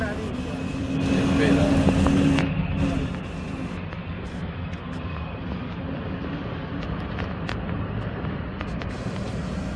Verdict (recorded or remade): recorded